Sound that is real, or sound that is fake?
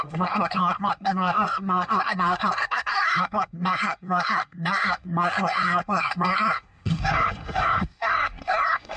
fake